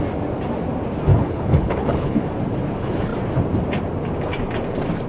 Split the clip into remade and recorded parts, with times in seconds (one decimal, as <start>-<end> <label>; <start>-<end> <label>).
0.0-1.1 recorded; 1.1-2.3 remade; 2.3-5.1 recorded